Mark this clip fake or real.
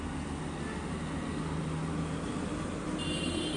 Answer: real